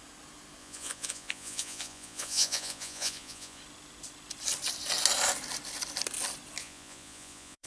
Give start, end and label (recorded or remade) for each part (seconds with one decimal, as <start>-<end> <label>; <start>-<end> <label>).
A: 0.0-0.6 recorded; 0.6-3.6 remade; 3.6-6.6 recorded; 6.6-7.7 remade